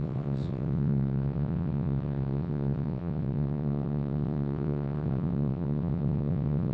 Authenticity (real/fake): fake